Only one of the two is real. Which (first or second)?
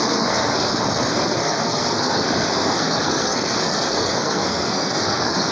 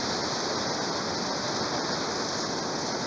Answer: second